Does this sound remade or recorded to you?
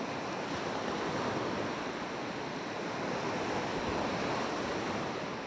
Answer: recorded